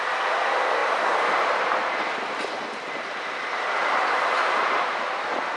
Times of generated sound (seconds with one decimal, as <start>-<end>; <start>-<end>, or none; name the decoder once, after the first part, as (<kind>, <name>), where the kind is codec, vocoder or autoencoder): 0.8-4.2 (vocoder, BigVGAN v2)